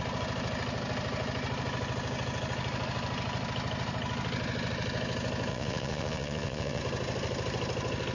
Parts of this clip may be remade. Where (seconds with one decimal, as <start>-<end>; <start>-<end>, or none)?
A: 5.5-6.8